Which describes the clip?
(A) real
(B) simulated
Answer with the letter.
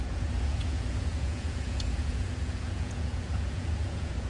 B